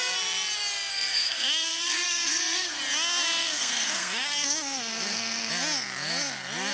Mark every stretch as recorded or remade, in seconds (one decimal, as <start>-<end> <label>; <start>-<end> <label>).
0.0-0.9 recorded; 0.9-2.8 remade; 2.8-3.4 recorded; 3.4-5.5 remade; 5.5-6.7 recorded